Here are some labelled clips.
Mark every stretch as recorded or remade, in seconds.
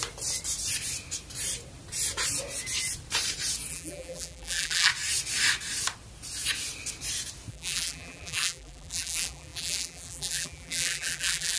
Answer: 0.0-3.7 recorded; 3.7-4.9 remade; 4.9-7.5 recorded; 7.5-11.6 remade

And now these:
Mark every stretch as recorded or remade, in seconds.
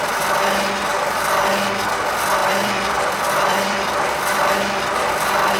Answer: 0.0-0.9 recorded; 0.9-1.5 remade; 1.5-2.4 recorded; 2.4-4.5 remade; 4.5-5.6 recorded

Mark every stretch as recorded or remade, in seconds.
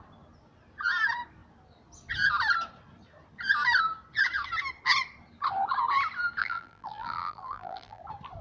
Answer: 0.0-6.4 recorded; 6.4-8.0 remade; 8.0-8.4 recorded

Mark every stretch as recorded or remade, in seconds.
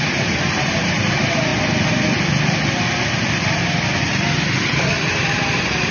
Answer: 0.0-1.5 remade; 1.5-4.0 recorded; 4.0-5.9 remade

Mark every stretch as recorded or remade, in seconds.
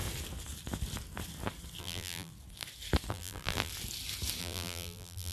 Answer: 0.0-1.8 recorded; 1.8-2.3 remade; 2.3-3.1 recorded; 3.1-3.7 remade; 3.7-4.4 recorded; 4.4-5.3 remade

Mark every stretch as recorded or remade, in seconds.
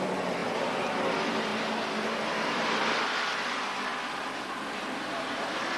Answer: 0.0-0.4 remade; 0.4-1.0 recorded; 1.0-5.8 remade